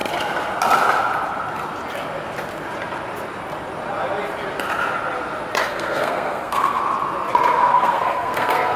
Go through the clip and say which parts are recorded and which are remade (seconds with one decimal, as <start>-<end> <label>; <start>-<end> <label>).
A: 0.0-5.6 recorded; 5.6-6.8 remade; 6.8-7.7 recorded; 7.7-8.8 remade